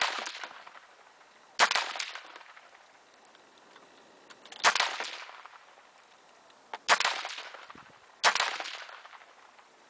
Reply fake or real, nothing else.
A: real